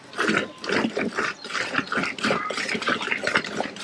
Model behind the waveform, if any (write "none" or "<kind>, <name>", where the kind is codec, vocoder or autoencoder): vocoder, BigVGAN v2